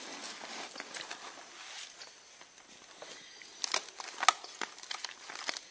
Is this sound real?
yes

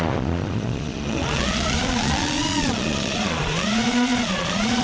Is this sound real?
no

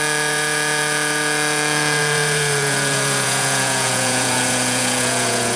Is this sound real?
no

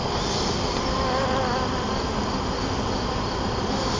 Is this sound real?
yes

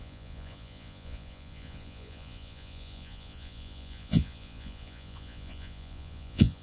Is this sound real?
no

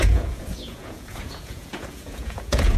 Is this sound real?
no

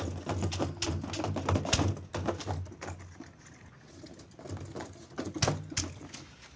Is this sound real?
yes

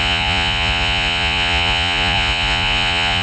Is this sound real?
no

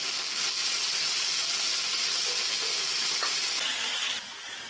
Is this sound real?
yes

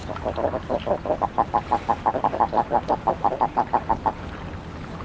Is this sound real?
yes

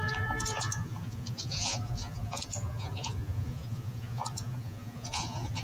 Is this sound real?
no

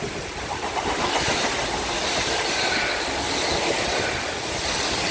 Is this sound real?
yes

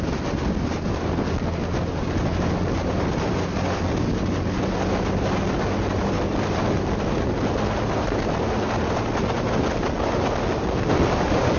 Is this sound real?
yes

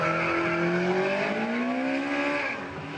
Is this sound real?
yes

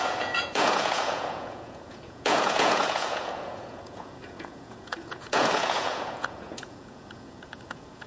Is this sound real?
no